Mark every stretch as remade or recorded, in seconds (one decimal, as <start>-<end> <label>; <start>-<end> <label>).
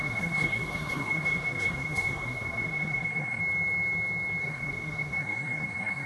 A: 0.0-3.4 remade; 3.4-4.4 recorded; 4.4-6.1 remade